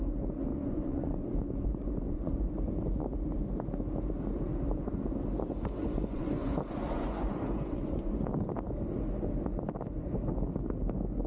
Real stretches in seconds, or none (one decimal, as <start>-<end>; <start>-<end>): 0.0-0.5; 2.5-5.8; 8.3-11.3